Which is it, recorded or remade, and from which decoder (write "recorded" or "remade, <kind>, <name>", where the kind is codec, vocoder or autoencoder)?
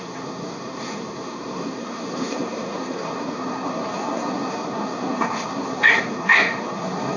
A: remade, codec, SNAC